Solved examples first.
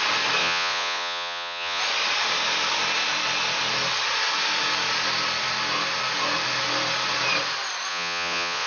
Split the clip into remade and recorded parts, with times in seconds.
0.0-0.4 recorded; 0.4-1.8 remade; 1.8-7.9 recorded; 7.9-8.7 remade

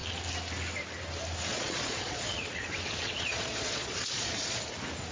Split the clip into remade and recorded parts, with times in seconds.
0.0-1.5 recorded; 1.5-4.6 remade; 4.6-5.1 recorded

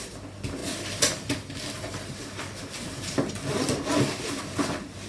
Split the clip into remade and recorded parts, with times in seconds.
0.0-5.1 recorded

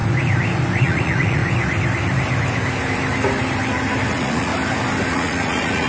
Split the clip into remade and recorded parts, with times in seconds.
0.0-0.8 recorded; 0.8-1.4 remade; 1.4-4.1 recorded; 4.1-4.5 remade; 4.5-5.1 recorded; 5.1-5.9 remade

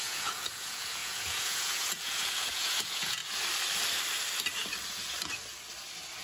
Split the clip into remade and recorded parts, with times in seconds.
0.0-3.2 remade; 3.2-6.2 recorded